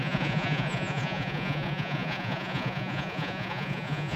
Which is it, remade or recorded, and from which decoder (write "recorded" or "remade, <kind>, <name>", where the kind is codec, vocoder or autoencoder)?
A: remade, vocoder, Vocos